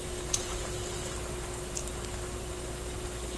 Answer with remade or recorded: recorded